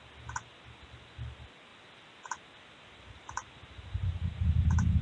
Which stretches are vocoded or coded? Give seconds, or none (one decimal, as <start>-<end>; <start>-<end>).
1.7-5.0